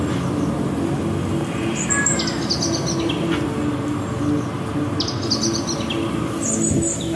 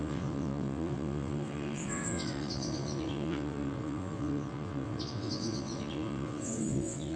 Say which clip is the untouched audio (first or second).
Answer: first